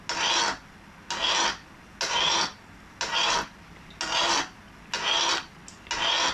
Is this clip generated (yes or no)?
no